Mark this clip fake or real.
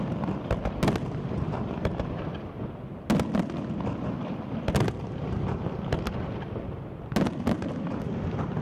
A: real